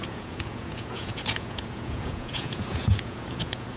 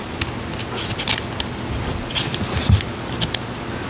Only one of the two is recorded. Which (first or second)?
second